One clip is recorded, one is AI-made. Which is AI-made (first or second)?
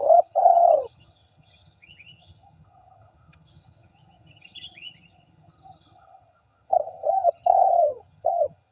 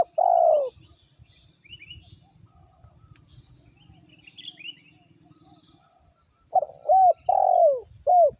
first